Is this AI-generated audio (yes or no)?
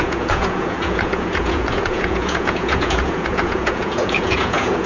yes